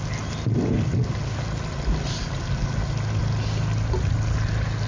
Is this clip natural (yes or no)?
yes